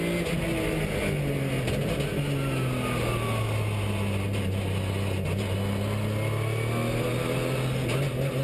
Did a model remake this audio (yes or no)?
no